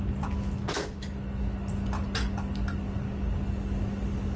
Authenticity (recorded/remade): recorded